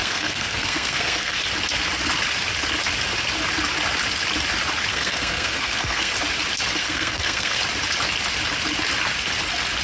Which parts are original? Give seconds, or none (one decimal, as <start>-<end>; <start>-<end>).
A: 1.4-4.9; 6.1-6.8; 7.6-9.8